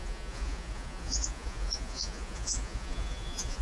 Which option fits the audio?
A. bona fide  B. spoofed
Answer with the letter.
B